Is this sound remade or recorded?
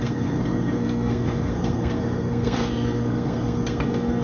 remade